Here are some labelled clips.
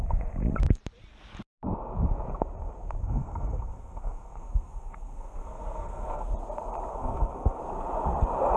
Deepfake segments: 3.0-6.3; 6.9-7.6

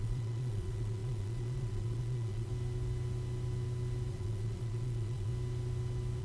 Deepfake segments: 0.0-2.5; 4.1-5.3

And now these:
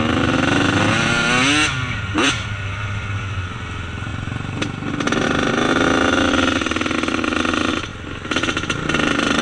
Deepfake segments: none

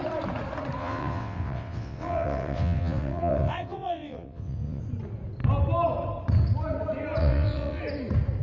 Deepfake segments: 0.8-4.8; 7.2-7.8

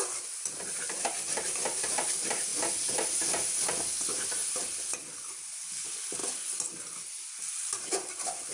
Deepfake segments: 0.0-2.5; 3.7-4.4; 5.7-6.2; 7.5-8.5

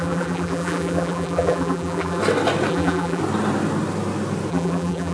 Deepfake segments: 0.0-2.2; 2.7-3.2; 4.5-5.1

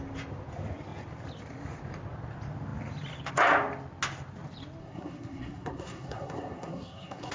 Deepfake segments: 4.8-7.3

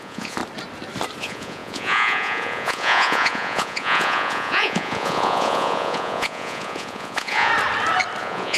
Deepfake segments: 0.0-0.4; 1.2-7.5; 8.2-8.6